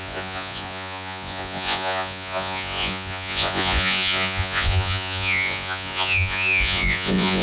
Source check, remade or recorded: remade